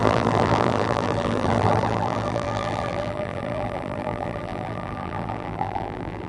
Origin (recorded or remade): remade